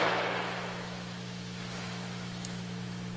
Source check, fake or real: fake